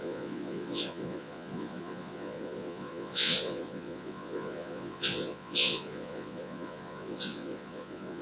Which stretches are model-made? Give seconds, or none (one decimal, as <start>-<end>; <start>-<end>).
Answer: 0.0-8.2